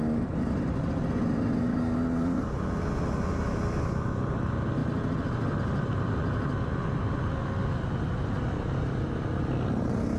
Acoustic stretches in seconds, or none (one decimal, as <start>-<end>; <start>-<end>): 0.0-10.2